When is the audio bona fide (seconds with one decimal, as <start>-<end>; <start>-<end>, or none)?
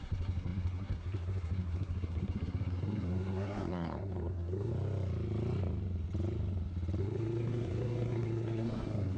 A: 4.7-7.0